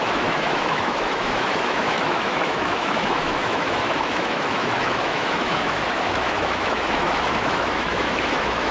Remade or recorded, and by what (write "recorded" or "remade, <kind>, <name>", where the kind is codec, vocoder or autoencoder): remade, autoencoder, DAC-VAE